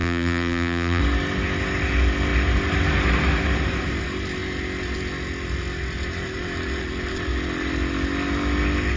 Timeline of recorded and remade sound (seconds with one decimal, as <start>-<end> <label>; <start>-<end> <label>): 0.0-1.0 remade; 1.0-9.0 recorded